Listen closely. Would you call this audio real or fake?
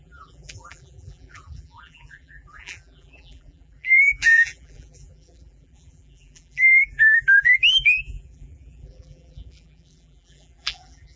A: fake